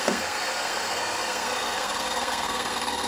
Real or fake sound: fake